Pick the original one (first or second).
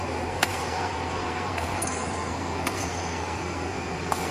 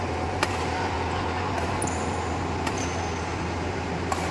second